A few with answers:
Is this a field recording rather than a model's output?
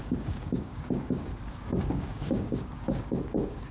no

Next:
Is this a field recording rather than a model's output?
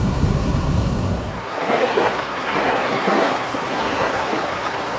no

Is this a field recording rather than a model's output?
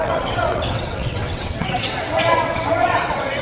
no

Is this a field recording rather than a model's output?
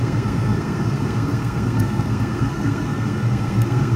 no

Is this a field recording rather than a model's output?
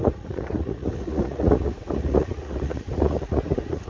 no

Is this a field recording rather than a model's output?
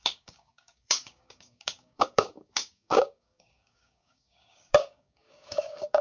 no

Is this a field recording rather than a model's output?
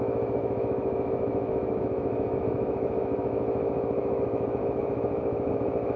no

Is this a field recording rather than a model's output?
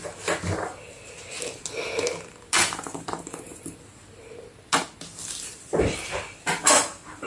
yes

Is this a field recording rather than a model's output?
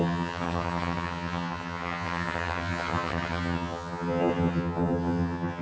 no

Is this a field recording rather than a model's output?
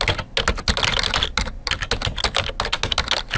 yes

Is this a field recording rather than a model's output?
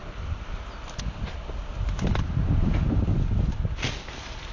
yes